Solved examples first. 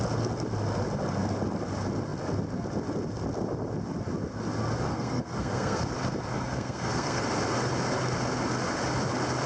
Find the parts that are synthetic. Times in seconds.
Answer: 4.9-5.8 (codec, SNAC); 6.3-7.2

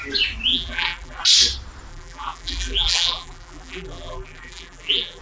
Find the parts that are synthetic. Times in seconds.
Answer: 0.5-1.2 (vocoder, BigVGAN v2); 1.9-5.2

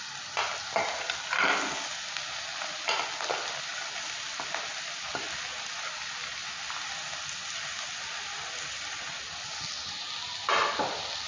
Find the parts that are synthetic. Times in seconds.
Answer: none